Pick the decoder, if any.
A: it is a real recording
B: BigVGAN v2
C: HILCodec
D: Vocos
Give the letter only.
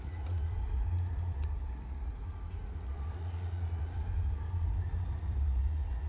D